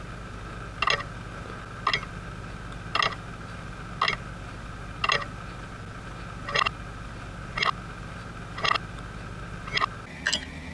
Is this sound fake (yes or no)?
no